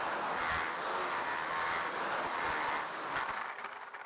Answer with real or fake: real